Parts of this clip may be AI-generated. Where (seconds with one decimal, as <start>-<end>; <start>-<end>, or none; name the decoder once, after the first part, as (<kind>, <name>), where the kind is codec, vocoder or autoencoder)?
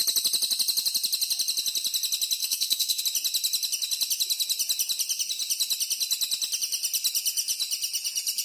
2.4-3.0 (codec, SNAC)